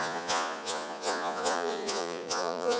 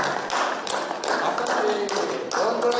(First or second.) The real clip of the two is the second